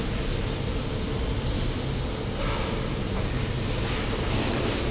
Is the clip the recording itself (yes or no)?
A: yes